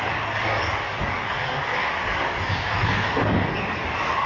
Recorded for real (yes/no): no